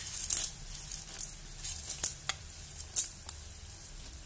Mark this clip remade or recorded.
recorded